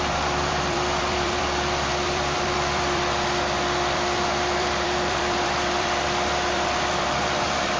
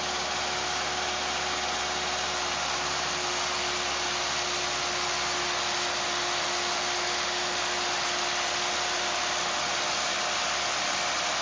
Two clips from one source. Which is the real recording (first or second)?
second